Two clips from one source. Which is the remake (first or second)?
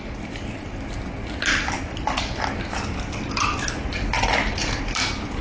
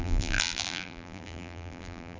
second